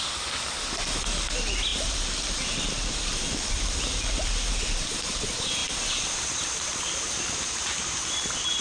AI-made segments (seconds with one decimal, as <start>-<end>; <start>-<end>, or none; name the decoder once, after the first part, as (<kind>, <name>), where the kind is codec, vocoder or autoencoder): 1.7-5.0 (vocoder, BigVGAN v2); 5.6-6.8